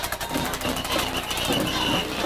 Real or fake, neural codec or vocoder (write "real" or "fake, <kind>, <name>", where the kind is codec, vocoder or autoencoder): real